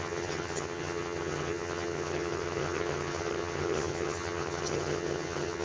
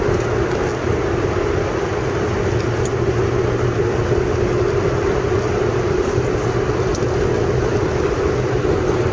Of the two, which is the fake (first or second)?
first